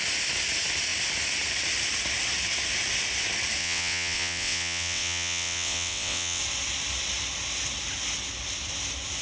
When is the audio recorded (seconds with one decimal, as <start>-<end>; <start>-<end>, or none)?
0.0-3.6; 6.4-9.2